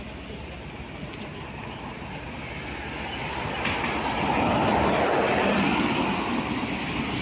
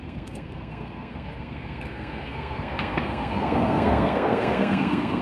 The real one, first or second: first